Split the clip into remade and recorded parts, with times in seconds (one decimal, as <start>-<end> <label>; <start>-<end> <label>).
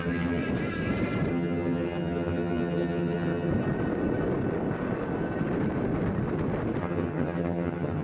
0.0-0.4 remade; 0.4-1.3 recorded; 1.3-3.5 remade; 3.5-6.8 recorded; 6.8-8.0 remade